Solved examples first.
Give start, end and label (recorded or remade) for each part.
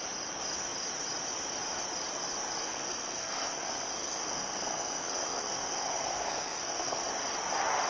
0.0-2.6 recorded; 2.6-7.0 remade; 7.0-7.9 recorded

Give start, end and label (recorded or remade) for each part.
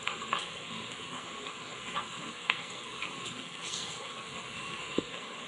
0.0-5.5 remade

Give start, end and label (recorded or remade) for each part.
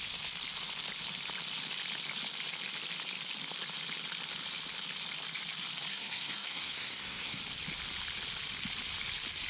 0.0-5.9 recorded; 5.9-7.4 remade; 7.4-9.5 recorded